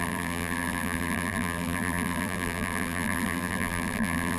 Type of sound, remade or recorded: remade